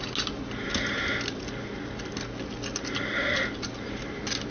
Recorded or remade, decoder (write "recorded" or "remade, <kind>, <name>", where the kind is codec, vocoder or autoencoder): recorded